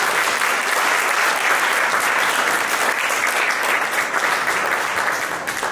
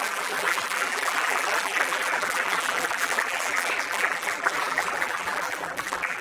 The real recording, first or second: first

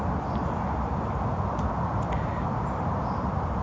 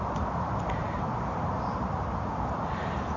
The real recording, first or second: first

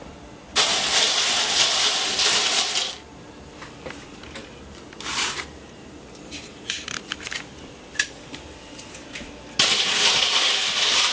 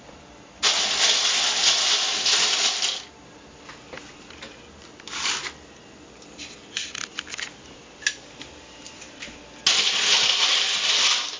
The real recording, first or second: second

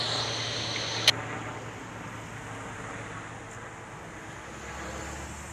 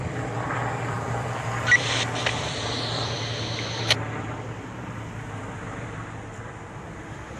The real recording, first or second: first